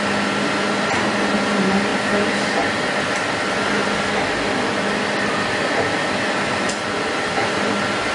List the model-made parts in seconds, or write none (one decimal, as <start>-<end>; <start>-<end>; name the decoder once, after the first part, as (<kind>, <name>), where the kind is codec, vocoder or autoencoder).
none